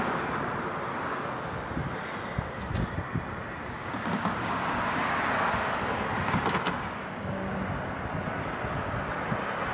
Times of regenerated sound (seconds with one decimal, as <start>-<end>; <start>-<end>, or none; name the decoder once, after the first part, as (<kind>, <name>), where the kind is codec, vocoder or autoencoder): 3.6-5.1 (codec, DAC); 7.0-7.6

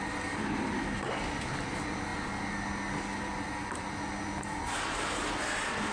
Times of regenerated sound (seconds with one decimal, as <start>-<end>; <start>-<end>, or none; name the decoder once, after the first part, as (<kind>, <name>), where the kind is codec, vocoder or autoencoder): none

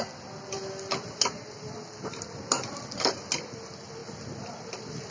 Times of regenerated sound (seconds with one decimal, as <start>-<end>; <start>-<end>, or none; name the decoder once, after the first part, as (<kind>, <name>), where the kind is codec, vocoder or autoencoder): none

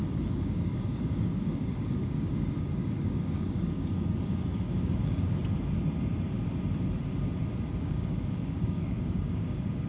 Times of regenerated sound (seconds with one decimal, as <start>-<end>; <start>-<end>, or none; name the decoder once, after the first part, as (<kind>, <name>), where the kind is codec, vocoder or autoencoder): 0.0-5.4 (codec, DAC); 7.8-9.9

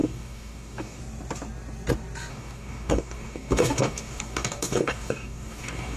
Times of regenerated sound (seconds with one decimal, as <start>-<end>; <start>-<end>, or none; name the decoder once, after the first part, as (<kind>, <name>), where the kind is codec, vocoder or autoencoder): 0.0-1.0 (codec, DAC); 2.3-6.0

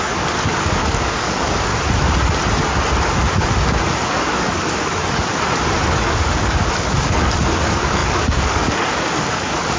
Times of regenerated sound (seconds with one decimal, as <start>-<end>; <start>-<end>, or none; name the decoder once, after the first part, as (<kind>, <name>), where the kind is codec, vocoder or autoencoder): 0.0-1.7 (codec, DAC); 4.1-5.0; 6.0-9.8

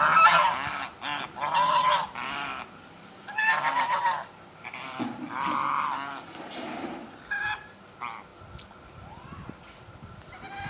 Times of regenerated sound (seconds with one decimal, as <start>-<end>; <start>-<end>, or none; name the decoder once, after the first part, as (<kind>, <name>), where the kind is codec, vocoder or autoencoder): none